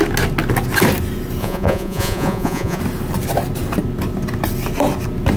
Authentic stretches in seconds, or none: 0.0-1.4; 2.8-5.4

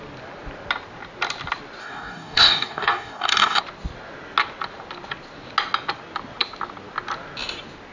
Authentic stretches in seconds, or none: 0.0-1.8; 3.6-7.9

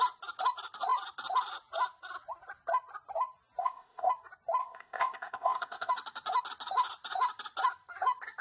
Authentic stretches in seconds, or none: 0.0-3.6; 4.1-4.6; 5.9-8.4

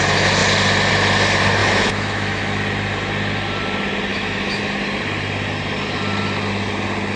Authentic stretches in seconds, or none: 0.0-1.6; 2.4-4.1; 4.6-7.2